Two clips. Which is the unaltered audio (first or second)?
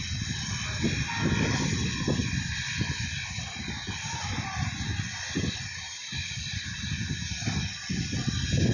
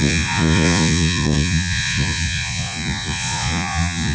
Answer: first